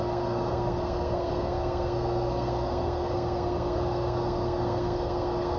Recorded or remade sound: remade